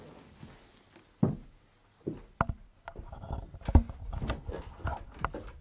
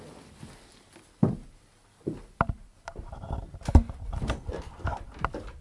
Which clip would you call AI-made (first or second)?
second